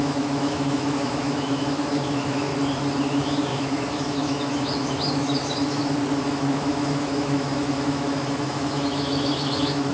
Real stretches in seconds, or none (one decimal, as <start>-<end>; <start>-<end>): 2.5-3.1; 5.8-6.3

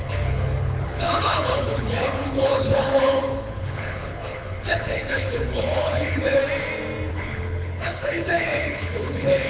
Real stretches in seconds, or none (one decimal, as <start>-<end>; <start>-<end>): 6.4-7.1

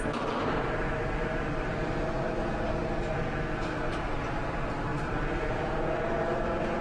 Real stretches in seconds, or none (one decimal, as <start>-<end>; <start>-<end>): 0.0-6.8

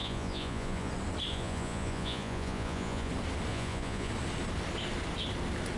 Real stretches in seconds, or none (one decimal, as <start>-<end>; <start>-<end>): 0.9-1.3; 3.1-3.5; 4.1-5.8

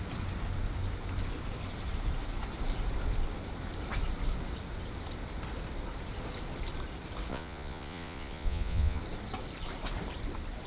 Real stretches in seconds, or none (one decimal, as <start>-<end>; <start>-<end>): 0.0-7.3; 9.0-10.7

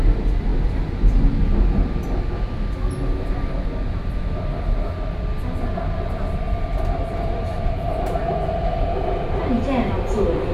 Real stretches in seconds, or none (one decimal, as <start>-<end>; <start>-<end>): 0.0-7.0; 8.3-10.5

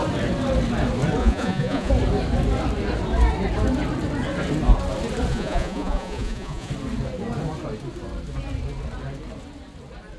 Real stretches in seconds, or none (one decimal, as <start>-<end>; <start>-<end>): 0.0-1.2; 1.9-5.3; 6.7-10.2

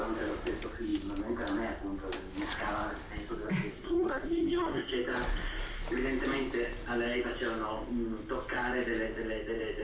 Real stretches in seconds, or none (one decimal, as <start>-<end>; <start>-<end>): 0.0-3.7; 4.9-9.8